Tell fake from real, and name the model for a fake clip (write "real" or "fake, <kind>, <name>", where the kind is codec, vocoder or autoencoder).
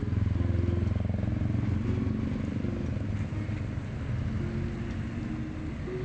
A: real